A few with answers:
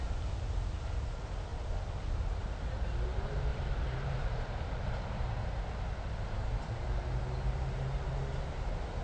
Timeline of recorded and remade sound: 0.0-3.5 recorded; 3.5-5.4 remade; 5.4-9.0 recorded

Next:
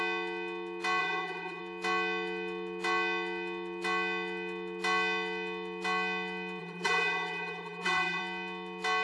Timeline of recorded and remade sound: 0.0-1.0 recorded; 1.0-1.6 remade; 1.6-6.6 recorded; 6.6-8.2 remade; 8.2-9.0 recorded

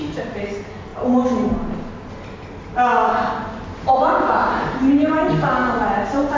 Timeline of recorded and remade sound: 0.0-2.7 recorded; 2.7-4.8 remade; 4.8-6.4 recorded

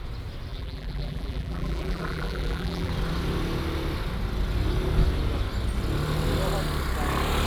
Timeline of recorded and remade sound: 0.0-0.5 recorded; 0.5-2.9 remade; 2.9-7.5 recorded

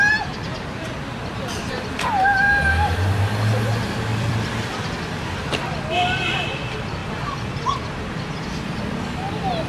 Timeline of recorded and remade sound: 0.0-4.1 recorded; 4.1-4.9 remade; 4.9-7.0 recorded; 7.0-7.8 remade; 7.8-9.7 recorded

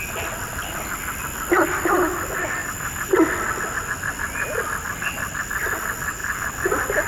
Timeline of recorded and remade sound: 0.0-2.6 recorded; 2.6-3.1 remade; 3.1-7.1 recorded